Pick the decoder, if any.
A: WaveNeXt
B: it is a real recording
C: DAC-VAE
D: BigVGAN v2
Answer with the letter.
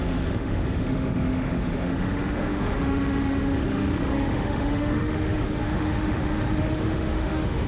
C